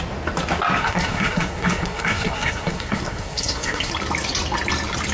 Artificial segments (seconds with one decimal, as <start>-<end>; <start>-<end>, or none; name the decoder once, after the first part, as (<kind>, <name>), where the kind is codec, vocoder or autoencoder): 0.8-3.9 (codec, SNAC)